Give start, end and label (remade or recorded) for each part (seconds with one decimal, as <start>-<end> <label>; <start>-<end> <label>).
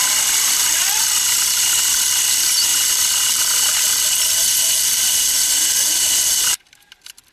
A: 0.0-1.1 remade; 1.1-2.7 recorded; 2.7-6.1 remade; 6.1-7.3 recorded